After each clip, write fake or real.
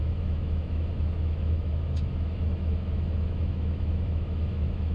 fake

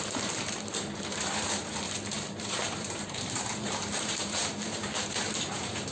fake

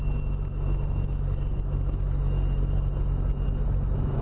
real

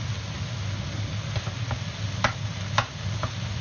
real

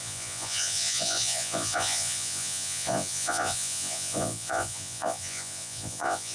fake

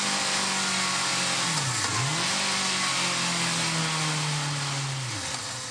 real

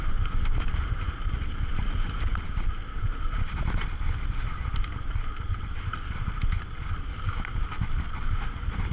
real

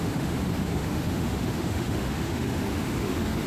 fake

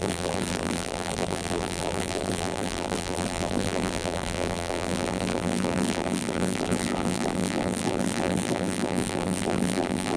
fake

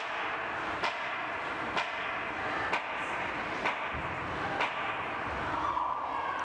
real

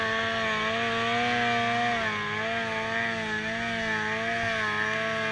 real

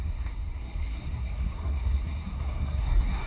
fake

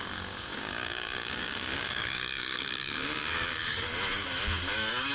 fake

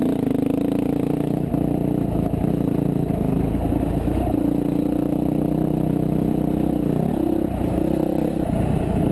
real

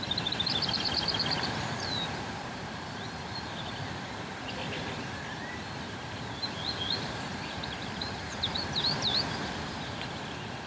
fake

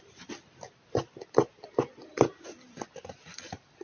real